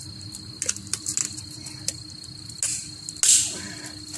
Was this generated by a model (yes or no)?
no